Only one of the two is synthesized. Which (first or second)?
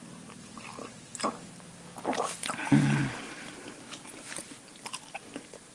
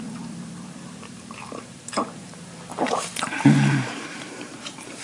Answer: second